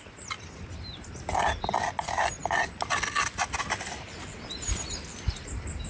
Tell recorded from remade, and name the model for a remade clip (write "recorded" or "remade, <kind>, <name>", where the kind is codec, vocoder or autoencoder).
recorded